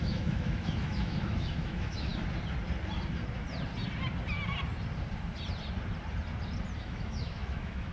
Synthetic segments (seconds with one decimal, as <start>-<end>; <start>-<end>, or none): 0.0-2.1; 6.8-7.9